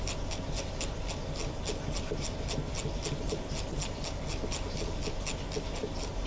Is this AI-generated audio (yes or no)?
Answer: no